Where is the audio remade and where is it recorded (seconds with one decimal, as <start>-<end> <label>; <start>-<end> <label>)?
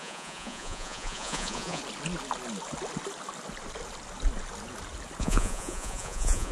0.0-1.8 remade; 1.8-5.2 recorded; 5.2-6.5 remade